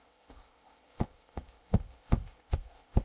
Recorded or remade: remade